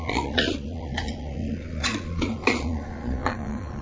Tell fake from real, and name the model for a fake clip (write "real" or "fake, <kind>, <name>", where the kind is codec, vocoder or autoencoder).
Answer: fake, vocoder, Vocos